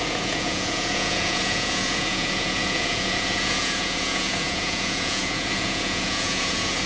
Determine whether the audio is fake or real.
fake